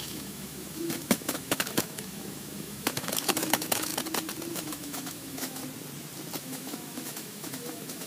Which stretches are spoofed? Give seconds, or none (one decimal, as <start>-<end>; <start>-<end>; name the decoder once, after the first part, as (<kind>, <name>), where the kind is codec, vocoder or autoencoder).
0.0-3.9 (autoencoder, DAC-VAE); 4.5-5.6; 6.4-8.1